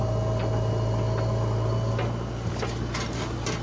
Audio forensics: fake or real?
real